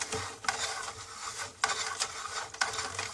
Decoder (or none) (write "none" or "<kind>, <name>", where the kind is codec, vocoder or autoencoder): none